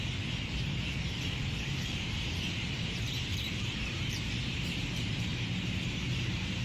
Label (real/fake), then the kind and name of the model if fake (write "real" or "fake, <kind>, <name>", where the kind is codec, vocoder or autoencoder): fake, vocoder, BigVGAN v2